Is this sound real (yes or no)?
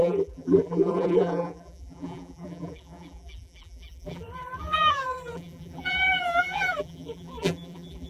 no